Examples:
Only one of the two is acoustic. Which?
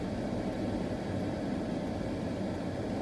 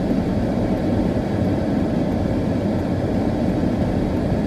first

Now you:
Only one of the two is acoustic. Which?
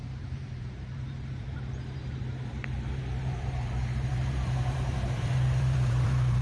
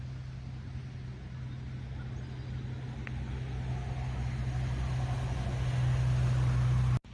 second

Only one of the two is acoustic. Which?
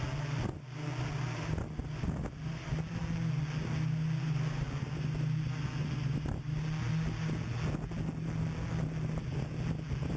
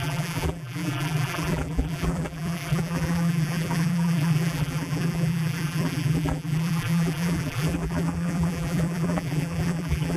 first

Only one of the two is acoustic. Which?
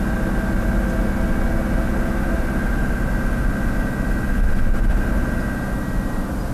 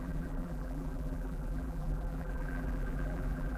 first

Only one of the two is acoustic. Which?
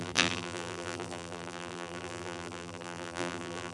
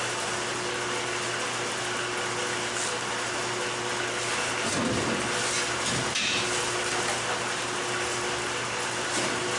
second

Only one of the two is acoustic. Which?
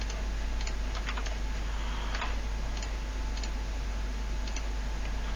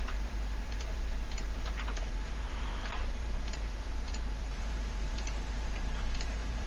first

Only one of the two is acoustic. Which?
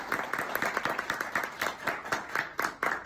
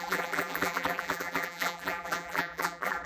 first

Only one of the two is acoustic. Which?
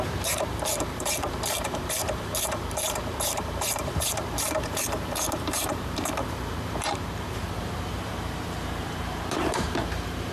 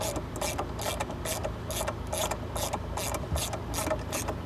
second